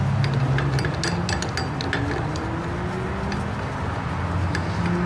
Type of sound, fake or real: real